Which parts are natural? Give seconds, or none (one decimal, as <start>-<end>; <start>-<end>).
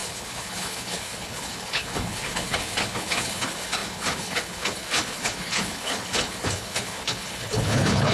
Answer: none